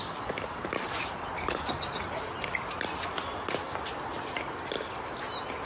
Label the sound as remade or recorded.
recorded